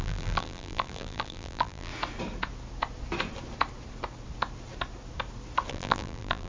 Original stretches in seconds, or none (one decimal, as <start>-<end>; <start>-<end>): 1.9-5.7